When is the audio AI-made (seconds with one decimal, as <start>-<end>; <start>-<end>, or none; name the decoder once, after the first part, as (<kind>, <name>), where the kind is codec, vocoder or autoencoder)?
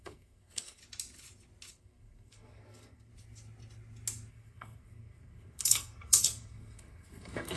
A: 0.0-0.8 (codec, SNAC); 1.7-3.1; 4.3-7.6